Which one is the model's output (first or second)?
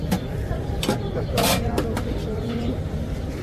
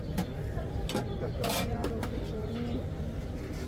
first